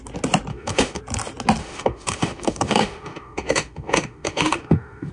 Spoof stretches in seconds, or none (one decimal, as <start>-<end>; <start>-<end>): 0.5-1.0; 1.6-5.1

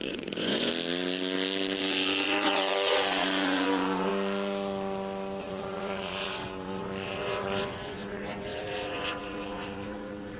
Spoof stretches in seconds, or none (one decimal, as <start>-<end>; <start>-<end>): 0.0-0.7; 1.8-4.1; 5.4-10.4

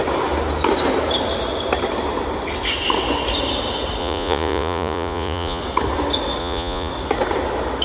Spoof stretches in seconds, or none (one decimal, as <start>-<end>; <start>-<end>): 4.0-5.6; 6.4-6.9

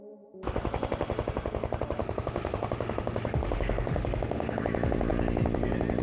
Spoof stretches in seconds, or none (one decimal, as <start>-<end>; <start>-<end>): 2.0-4.6

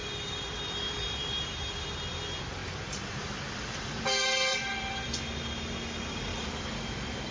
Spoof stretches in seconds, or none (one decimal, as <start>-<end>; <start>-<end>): 0.0-1.8; 2.6-4.0; 4.5-5.2; 6.3-7.3

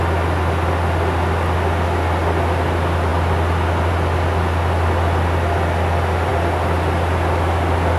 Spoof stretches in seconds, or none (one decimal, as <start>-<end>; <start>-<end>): none

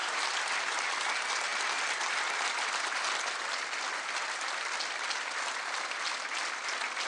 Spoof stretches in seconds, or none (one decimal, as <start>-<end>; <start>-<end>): none

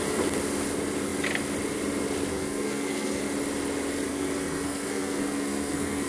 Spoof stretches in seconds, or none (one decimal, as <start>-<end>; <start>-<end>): 2.3-3.2; 4.1-6.1